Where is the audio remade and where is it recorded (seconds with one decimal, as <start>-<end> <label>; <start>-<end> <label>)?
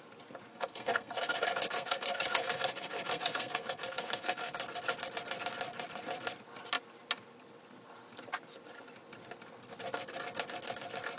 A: 0.0-0.5 recorded; 0.5-4.5 remade; 4.5-11.2 recorded